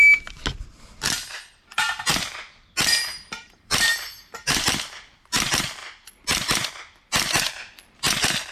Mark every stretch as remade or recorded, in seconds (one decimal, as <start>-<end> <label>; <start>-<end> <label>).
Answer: 0.0-1.5 recorded; 1.5-2.1 remade; 2.1-3.0 recorded; 3.0-5.8 remade; 5.8-7.4 recorded; 7.4-8.5 remade